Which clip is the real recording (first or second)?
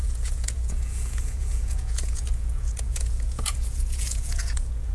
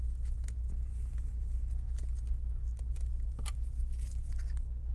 second